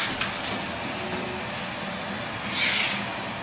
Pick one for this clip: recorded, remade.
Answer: recorded